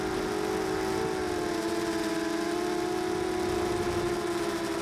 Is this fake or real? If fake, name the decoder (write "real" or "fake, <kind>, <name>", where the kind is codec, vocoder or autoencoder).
real